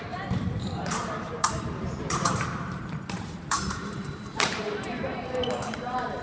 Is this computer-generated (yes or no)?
yes